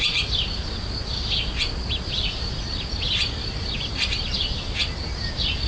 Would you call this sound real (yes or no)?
yes